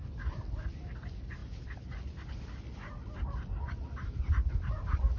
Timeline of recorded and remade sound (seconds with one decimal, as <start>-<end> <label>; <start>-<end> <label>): 0.0-5.2 recorded